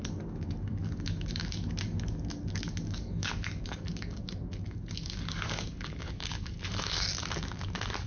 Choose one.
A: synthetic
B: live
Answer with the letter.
A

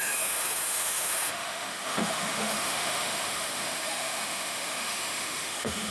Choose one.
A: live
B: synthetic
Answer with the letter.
B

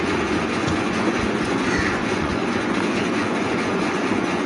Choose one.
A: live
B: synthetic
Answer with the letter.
B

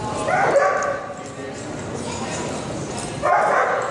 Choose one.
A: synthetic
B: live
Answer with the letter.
B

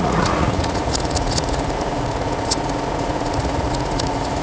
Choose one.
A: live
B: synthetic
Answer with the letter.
B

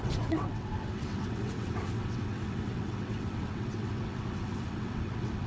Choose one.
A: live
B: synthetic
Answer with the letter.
B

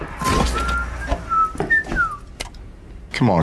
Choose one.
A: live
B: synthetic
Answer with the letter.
A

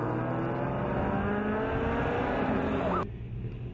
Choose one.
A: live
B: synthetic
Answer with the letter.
A